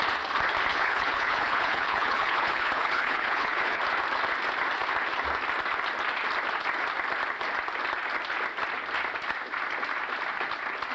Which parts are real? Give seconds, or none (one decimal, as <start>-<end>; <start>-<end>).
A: 0.0-0.7; 3.8-10.9